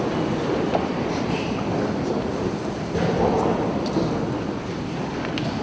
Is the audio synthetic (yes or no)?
no